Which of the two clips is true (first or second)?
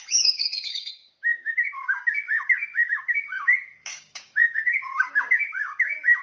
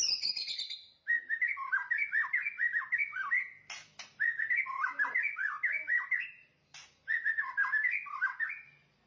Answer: second